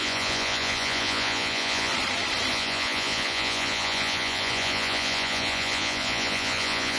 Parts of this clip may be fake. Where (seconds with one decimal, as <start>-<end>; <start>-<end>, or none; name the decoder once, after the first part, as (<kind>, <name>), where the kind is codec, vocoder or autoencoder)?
0.0-1.9 (vocoder, Vocos); 2.5-7.0